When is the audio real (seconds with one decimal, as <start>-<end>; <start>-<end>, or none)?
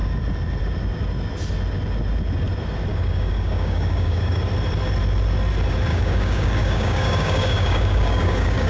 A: 0.0-2.9; 4.4-5.9